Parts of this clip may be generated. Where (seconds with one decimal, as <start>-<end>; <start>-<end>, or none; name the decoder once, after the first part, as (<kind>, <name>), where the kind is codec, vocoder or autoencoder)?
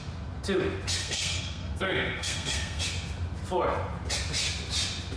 1.0-2.8 (codec, SNAC)